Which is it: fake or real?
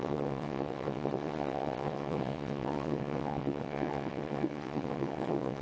fake